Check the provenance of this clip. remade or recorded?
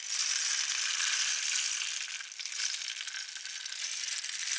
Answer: recorded